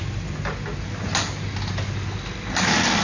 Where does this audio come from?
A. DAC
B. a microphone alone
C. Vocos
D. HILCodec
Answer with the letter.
B